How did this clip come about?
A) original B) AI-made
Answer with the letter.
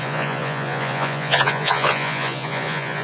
B